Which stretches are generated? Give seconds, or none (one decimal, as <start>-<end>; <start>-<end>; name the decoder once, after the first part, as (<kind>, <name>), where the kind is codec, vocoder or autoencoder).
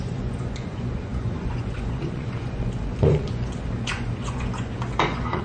0.0-5.4 (vocoder, Vocos)